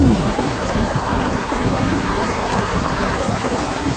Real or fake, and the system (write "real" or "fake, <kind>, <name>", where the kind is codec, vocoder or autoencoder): fake, codec, SNAC